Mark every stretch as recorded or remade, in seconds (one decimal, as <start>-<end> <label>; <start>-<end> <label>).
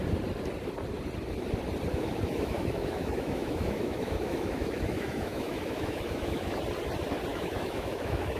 0.0-1.9 recorded; 1.9-6.6 remade; 6.6-7.3 recorded; 7.3-8.4 remade